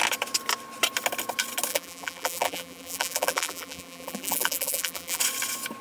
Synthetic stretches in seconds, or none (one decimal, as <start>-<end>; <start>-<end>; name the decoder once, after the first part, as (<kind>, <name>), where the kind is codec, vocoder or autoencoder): 1.7-5.2 (vocoder, BigVGAN v2)